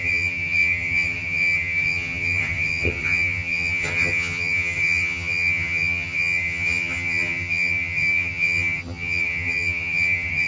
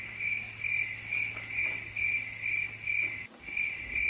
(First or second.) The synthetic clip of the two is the first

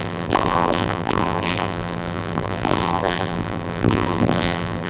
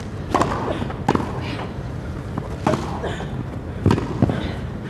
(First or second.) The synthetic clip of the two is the first